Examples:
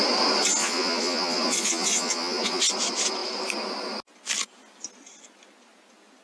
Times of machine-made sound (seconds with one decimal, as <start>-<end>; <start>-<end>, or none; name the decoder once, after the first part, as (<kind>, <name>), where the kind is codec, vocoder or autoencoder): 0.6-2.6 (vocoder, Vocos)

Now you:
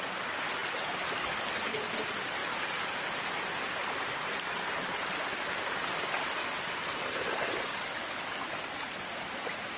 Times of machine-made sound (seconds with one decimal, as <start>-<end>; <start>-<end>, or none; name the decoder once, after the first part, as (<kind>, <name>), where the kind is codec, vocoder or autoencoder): none

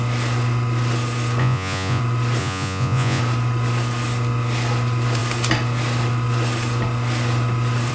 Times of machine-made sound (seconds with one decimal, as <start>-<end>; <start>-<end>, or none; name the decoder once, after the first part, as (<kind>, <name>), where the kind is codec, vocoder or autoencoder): 1.4-2.0 (vocoder, Vocos); 2.4-3.2

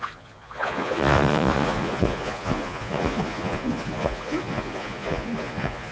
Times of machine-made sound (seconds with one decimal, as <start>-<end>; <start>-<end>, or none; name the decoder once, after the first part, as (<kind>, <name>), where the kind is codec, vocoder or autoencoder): 0.0-5.9 (vocoder, Vocos)

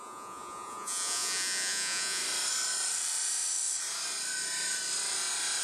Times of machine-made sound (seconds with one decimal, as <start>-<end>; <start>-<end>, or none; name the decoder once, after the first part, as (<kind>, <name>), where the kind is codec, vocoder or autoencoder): 0.0-2.2 (vocoder, Vocos)